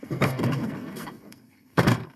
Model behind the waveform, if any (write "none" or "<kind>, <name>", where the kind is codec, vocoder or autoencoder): codec, SNAC